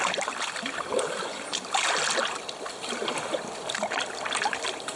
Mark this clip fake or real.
fake